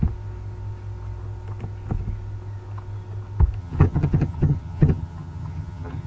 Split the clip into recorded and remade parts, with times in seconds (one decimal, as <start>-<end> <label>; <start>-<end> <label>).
0.0-3.6 recorded; 3.6-6.1 remade